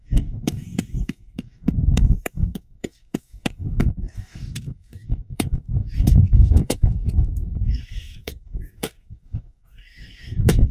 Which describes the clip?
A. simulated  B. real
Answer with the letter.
A